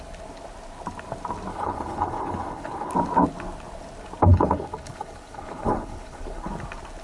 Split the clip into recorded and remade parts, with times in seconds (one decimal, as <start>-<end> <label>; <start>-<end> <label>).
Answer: 0.0-1.5 recorded; 1.5-2.9 remade; 2.9-4.3 recorded; 4.3-6.5 remade; 6.5-7.0 recorded